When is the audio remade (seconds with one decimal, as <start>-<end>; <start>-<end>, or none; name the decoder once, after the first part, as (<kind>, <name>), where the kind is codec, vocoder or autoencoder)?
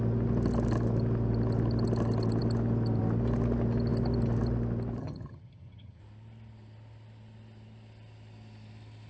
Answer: 5.0-6.0 (vocoder, HiFi-GAN)